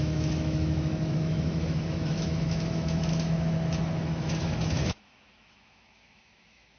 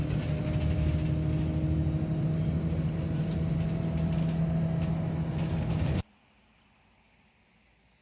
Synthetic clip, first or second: first